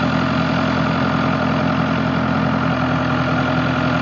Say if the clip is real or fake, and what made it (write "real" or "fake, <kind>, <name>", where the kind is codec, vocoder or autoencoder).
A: real